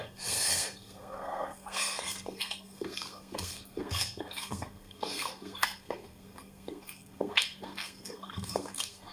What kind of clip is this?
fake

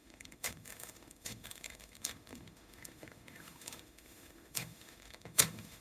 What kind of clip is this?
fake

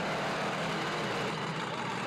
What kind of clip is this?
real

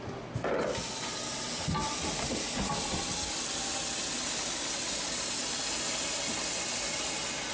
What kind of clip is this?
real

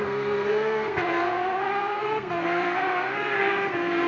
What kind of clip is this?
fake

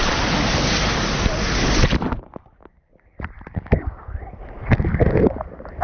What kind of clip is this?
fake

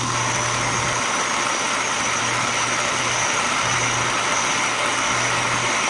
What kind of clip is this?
real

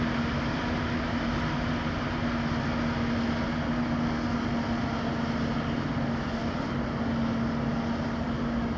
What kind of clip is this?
real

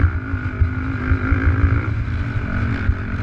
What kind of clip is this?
real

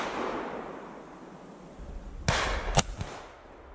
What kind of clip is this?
real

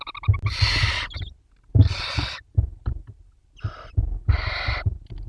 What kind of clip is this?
real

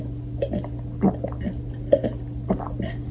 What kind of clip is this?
real